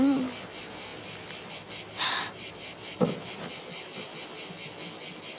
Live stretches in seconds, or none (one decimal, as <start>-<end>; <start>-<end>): 0.0-5.4